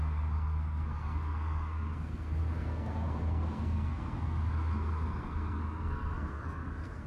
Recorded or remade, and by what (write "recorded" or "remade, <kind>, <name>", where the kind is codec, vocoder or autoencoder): remade, codec, SNAC